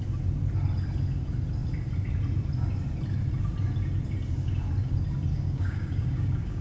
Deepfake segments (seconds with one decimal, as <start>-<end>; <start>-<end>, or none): 5.3-6.6